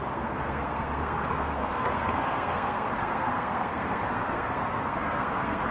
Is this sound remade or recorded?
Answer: remade